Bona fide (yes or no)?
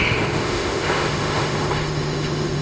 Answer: no